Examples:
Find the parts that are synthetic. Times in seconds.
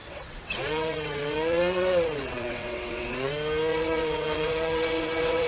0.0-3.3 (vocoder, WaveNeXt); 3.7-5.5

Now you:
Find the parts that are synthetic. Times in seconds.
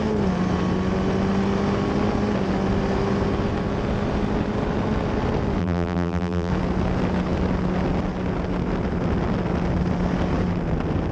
5.6-6.5 (vocoder, BigVGAN v2)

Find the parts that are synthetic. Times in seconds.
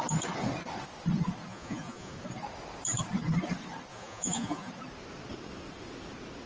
1.5-2.1 (vocoder, Vocos); 3.9-4.7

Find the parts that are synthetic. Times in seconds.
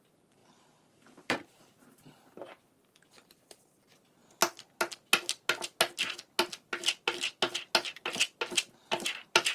0.4-2.7 (vocoder, BigVGAN v2)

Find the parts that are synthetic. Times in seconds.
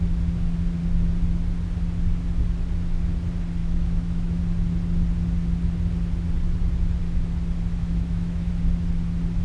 3.6-4.4 (autoencoder, DAC-VAE); 7.8-8.5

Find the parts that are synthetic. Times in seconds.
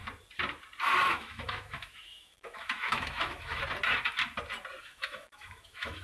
1.0-3.6 (autoencoder, DAC-VAE); 4.8-6.0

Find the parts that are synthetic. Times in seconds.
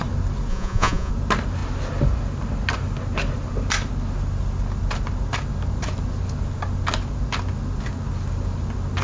0.5-1.1 (vocoder, Vocos)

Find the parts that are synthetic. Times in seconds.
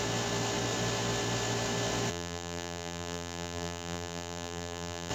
2.1-5.1 (vocoder, BigVGAN v2)